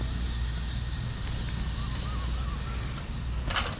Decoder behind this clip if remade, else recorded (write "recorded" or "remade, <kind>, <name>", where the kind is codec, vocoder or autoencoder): recorded